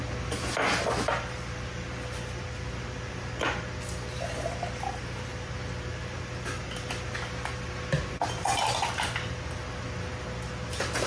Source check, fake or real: real